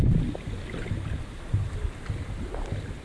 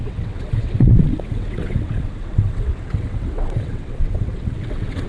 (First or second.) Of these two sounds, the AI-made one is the second